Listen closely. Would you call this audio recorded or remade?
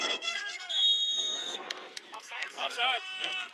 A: remade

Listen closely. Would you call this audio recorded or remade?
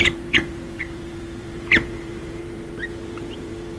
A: remade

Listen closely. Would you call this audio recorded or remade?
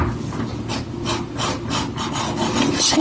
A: recorded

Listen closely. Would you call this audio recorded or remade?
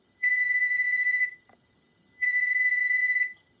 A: remade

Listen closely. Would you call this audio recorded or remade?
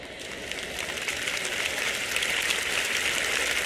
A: recorded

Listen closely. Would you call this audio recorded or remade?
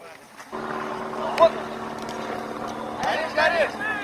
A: recorded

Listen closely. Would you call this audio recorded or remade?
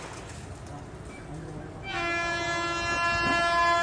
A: recorded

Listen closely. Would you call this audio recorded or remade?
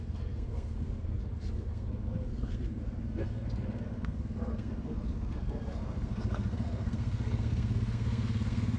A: remade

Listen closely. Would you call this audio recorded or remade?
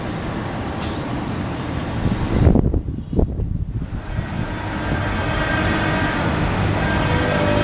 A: recorded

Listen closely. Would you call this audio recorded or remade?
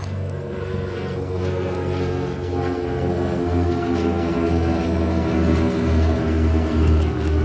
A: remade